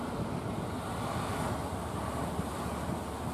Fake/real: real